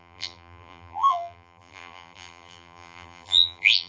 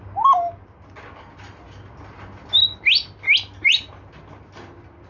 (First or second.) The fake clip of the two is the first